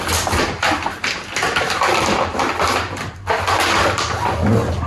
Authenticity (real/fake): real